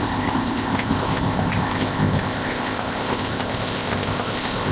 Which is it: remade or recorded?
remade